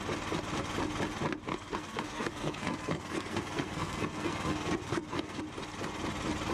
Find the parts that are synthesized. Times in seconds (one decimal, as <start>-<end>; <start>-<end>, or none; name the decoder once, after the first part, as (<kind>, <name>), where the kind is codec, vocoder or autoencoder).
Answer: 1.5-5.4 (codec, SNAC)